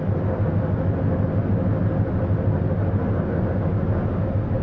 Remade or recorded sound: recorded